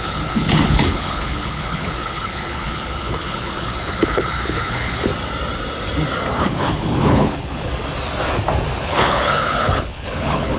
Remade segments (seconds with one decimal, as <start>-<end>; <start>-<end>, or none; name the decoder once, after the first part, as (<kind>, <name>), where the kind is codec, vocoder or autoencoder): 0.0-5.1 (codec, HILCodec); 6.4-7.7; 8.8-10.6